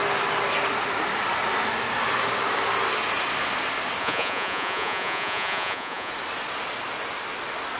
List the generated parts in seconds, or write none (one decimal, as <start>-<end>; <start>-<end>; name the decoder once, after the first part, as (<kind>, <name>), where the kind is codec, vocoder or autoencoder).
4.0-6.1 (vocoder, Vocos)